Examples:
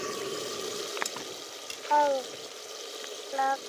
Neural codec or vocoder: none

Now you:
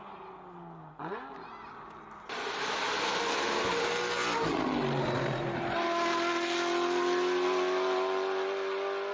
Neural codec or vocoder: none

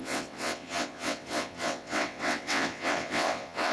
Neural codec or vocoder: vocoder, WaveNeXt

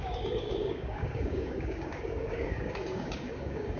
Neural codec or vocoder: codec, DAC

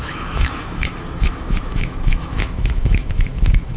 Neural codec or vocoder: autoencoder, DAC-VAE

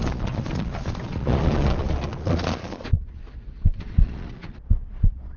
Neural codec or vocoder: vocoder, Vocos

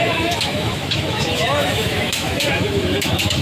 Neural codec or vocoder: autoencoder, DAC-VAE